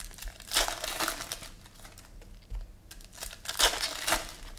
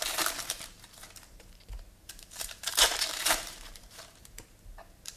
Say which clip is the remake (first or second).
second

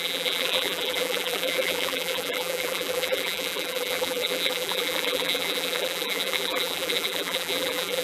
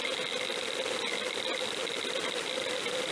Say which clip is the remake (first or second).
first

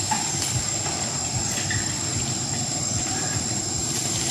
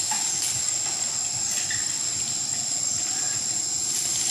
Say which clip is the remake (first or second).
first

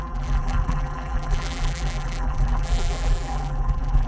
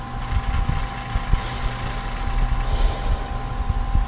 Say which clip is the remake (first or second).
first